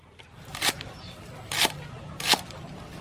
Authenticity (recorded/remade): recorded